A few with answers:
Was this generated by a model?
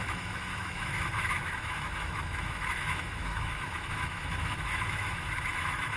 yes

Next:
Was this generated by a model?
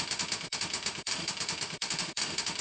yes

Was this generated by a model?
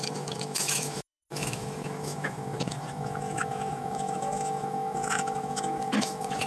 yes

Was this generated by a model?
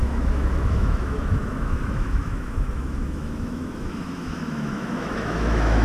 yes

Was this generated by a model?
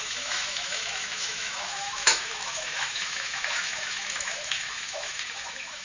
yes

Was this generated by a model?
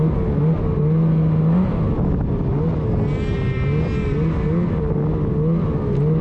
no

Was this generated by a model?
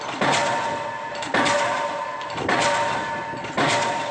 no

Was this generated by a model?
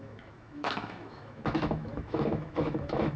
yes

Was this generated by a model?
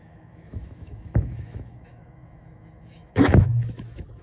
yes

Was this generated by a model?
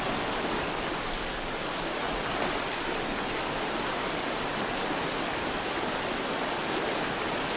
no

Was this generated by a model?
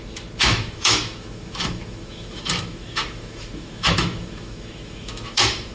yes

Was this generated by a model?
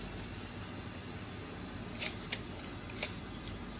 no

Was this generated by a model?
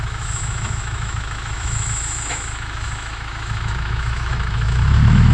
yes